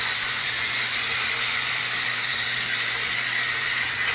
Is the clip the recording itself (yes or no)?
no